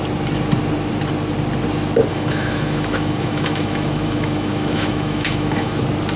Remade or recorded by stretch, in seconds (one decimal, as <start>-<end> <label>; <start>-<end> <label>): 0.0-2.1 recorded; 2.1-5.8 remade; 5.8-6.2 recorded